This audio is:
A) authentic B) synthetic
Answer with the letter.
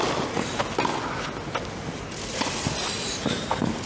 A